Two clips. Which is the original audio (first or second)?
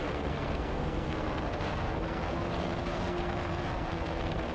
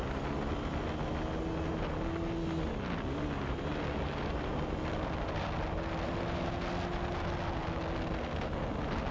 second